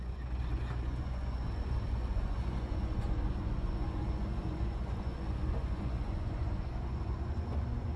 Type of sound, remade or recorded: remade